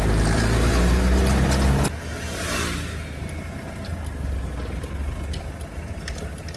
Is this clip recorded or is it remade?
recorded